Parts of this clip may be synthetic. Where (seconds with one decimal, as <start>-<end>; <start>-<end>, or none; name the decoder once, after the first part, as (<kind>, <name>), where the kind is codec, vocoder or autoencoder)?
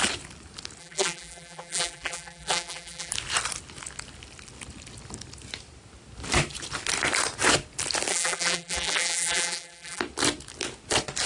0.8-3.1 (vocoder, BigVGAN v2); 8.1-10.0